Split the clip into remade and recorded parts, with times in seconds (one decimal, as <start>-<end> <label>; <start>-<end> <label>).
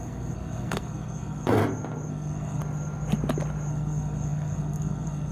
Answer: 0.0-1.6 remade; 1.6-2.1 recorded; 2.1-2.6 remade; 2.6-3.7 recorded; 3.7-5.3 remade